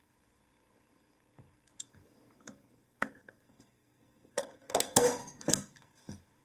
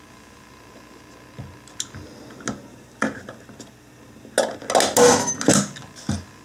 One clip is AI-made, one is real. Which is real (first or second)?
second